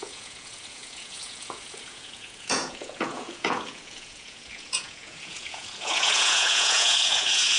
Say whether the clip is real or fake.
fake